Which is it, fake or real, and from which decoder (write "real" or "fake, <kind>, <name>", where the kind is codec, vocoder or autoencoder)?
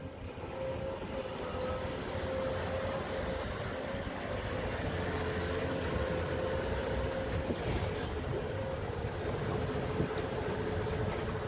real